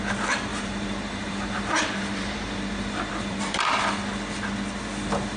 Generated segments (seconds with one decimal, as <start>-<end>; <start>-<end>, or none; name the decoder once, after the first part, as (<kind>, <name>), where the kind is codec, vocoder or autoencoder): 0.5-3.7 (vocoder, BigVGAN v2)

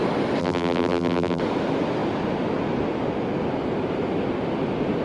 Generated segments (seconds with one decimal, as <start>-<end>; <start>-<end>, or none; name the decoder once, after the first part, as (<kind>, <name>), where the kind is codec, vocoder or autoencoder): 0.4-1.4 (vocoder, BigVGAN v2)

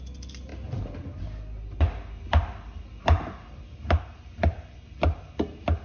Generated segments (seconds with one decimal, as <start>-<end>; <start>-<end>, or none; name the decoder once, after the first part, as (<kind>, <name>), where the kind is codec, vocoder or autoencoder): none

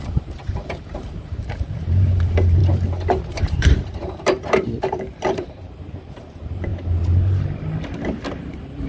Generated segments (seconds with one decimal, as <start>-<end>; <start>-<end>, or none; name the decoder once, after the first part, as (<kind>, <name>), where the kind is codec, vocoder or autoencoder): 0.0-2.6 (vocoder, BigVGAN v2); 3.3-6.7; 8.4-8.9